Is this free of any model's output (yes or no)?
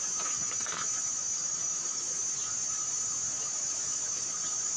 no